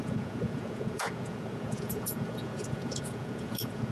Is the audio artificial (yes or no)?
yes